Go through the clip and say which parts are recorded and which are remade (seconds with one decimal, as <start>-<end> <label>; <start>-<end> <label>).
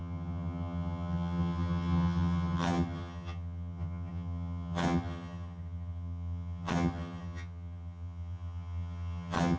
0.0-9.6 remade